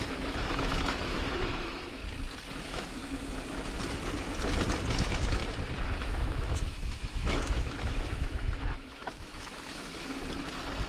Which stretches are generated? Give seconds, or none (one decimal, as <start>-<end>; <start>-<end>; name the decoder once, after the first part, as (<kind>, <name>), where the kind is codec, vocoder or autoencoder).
0.0-2.0 (autoencoder, DAC-VAE); 2.6-3.0; 4.9-5.4; 6.0-10.2